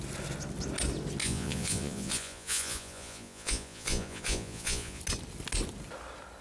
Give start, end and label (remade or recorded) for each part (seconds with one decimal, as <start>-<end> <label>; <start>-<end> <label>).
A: 0.0-1.2 recorded; 1.2-5.0 remade; 5.0-6.4 recorded